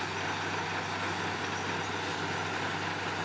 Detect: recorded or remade recorded